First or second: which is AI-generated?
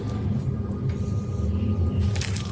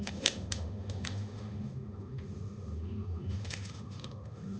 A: second